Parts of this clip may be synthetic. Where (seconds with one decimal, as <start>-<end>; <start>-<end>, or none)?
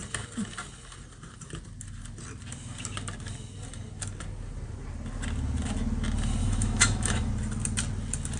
6.4-7.3